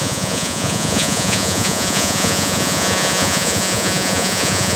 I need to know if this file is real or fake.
fake